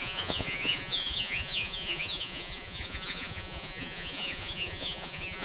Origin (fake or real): fake